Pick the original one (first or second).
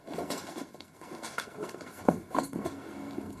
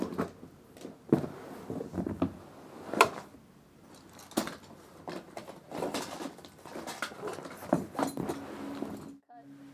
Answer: second